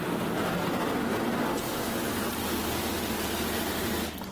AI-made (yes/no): no